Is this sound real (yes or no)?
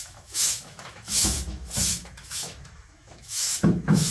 no